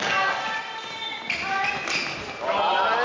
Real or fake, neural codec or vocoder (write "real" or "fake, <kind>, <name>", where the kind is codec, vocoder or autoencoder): real